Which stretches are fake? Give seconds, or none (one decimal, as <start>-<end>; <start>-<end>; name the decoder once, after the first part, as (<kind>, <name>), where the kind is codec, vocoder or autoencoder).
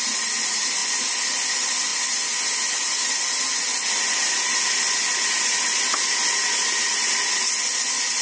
none